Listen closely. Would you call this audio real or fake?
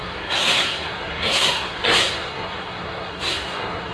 fake